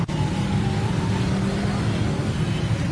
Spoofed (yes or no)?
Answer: no